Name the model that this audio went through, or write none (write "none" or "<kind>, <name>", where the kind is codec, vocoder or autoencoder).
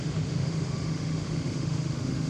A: autoencoder, DAC-VAE